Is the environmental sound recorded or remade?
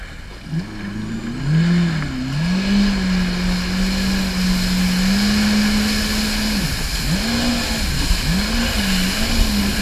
recorded